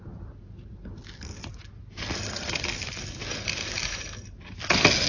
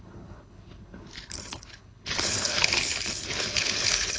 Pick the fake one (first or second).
second